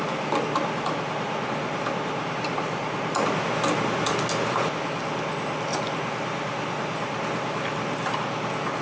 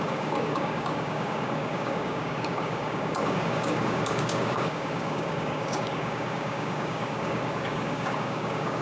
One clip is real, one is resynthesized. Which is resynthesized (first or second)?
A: second